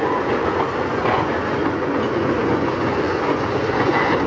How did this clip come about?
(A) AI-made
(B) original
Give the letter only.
A